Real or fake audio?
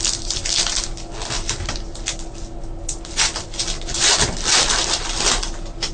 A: real